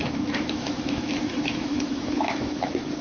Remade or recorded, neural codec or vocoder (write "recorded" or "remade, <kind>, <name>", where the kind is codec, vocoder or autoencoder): remade, autoencoder, DAC-VAE